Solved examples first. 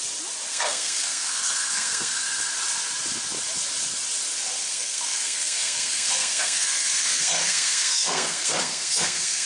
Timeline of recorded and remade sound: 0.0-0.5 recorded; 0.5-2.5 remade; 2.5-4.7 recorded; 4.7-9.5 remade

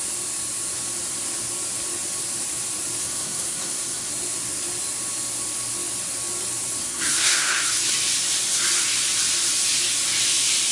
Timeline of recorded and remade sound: 0.0-3.0 recorded; 3.0-4.1 remade; 4.1-6.8 recorded; 6.8-7.9 remade; 7.9-10.7 recorded